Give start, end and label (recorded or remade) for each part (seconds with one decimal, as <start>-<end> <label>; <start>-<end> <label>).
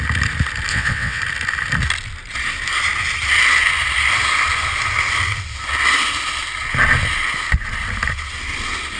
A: 0.0-0.7 recorded; 0.7-1.2 remade; 1.2-9.0 recorded